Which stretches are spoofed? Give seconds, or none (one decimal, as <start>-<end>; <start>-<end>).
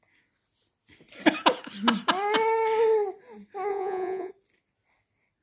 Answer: 3.7-4.3